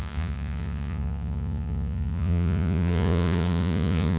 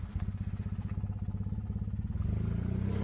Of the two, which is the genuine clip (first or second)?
second